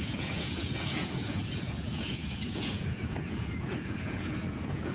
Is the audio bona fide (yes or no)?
no